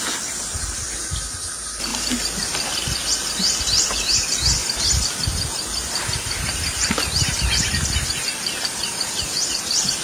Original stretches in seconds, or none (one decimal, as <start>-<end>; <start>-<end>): 0.0-1.9; 3.6-4.6; 9.6-10.0